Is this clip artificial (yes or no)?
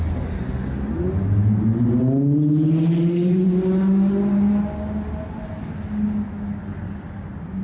no